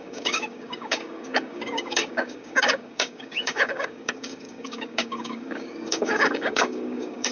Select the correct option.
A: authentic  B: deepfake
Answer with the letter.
B